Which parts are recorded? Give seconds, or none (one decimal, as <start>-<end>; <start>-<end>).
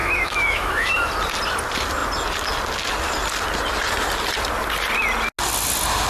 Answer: 1.1-6.1